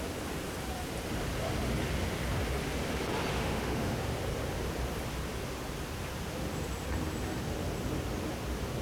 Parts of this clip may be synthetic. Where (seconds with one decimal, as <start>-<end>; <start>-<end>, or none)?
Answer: 3.3-4.0